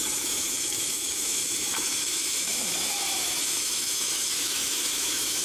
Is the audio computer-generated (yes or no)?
yes